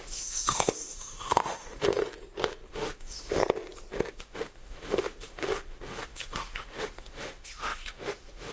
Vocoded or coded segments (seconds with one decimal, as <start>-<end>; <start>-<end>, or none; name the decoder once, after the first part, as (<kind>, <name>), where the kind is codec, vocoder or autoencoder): 0.0-2.0 (autoencoder, DAC-VAE); 2.7-3.4; 4.1-8.5